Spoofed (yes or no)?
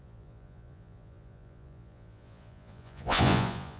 yes